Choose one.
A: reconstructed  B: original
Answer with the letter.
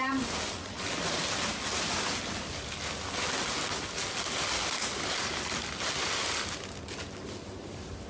B